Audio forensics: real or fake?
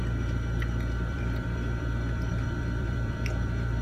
fake